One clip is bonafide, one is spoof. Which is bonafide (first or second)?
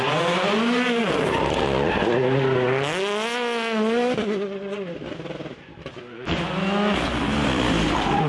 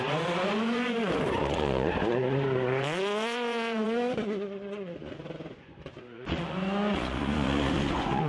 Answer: first